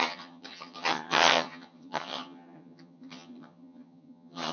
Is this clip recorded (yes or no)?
no